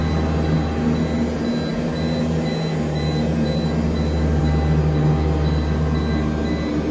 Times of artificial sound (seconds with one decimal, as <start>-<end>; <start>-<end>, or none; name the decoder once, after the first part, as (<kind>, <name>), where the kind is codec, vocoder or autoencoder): none